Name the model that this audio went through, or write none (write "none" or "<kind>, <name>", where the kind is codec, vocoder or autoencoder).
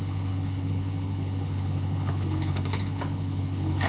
codec, HILCodec